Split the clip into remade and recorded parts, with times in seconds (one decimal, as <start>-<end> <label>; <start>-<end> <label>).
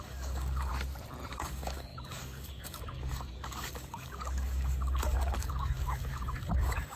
0.0-0.7 remade; 0.7-1.3 recorded; 1.3-7.0 remade